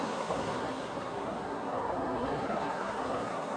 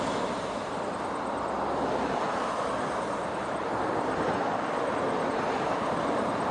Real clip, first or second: second